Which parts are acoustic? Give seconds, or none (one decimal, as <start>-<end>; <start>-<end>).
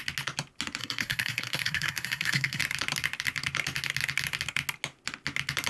0.0-0.8; 2.6-5.7